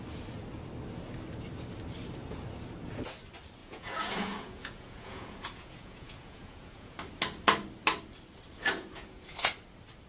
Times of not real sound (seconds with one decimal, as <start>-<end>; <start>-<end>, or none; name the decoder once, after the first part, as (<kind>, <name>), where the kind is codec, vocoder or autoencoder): 3.6-6.9 (vocoder, Vocos); 8.5-9.5